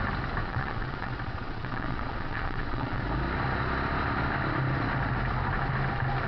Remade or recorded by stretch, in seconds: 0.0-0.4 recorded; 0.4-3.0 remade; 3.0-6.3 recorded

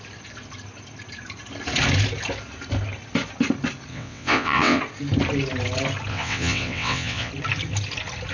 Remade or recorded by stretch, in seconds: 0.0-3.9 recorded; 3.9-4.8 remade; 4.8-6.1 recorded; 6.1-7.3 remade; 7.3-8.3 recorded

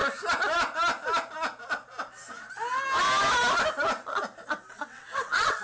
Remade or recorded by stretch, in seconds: 0.0-4.7 recorded; 4.7-5.6 remade

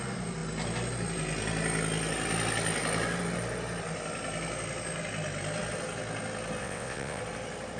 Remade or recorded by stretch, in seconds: 0.0-6.6 recorded; 6.6-7.2 remade; 7.2-7.8 recorded

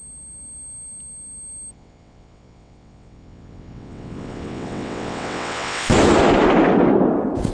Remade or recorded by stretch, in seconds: 0.0-1.7 recorded; 1.7-5.9 remade; 5.9-7.5 recorded

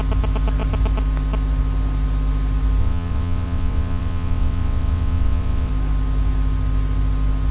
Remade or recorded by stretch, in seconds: 0.0-2.8 recorded; 2.8-5.7 remade; 5.7-7.5 recorded